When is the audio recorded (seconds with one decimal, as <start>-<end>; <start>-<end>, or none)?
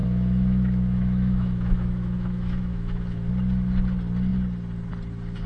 3.3-5.5